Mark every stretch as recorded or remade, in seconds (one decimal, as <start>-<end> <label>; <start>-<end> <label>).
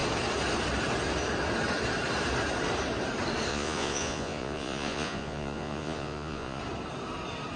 0.0-3.5 recorded; 3.5-6.6 remade; 6.6-7.6 recorded